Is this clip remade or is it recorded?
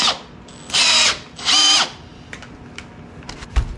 recorded